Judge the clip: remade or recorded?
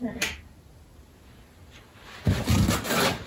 recorded